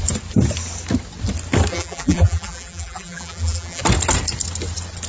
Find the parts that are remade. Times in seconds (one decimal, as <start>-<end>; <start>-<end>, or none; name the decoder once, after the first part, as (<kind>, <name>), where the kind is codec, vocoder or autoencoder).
1.7-3.8 (vocoder, BigVGAN v2)